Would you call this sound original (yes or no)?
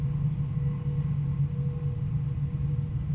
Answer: yes